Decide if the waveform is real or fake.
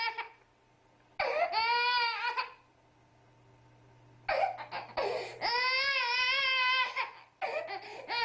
real